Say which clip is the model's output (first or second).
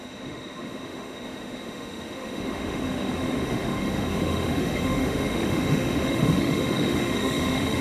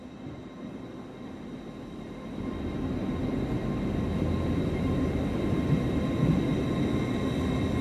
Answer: first